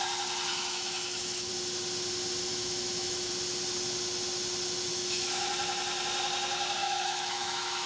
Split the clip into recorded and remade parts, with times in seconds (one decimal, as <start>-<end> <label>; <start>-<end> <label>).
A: 0.0-0.5 recorded; 0.5-1.5 remade; 1.5-2.5 recorded; 2.5-3.3 remade; 3.3-4.9 recorded; 4.9-5.5 remade; 5.5-6.8 recorded; 6.8-7.9 remade